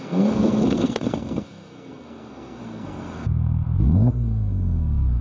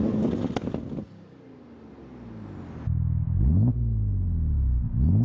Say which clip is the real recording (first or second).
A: second